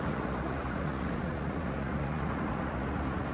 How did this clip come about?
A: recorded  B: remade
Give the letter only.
B